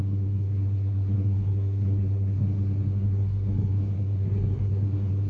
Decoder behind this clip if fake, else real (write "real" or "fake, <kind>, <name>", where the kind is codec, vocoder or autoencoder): fake, codec, SNAC